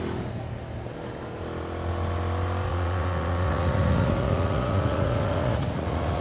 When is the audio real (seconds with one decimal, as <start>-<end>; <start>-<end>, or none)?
0.0-2.7